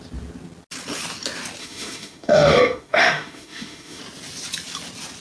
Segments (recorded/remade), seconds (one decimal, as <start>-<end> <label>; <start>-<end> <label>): 0.0-1.6 recorded; 1.6-4.0 remade; 4.0-5.2 recorded